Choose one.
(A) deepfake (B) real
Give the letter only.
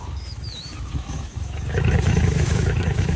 A